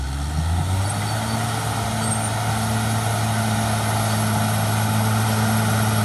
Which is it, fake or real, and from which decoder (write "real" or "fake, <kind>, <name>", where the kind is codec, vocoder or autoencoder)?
real